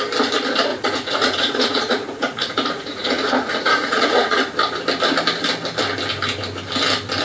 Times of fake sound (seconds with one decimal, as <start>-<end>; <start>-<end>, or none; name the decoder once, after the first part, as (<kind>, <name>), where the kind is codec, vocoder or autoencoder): 0.7-4.4 (vocoder, Vocos)